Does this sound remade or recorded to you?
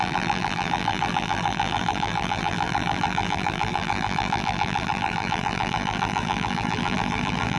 remade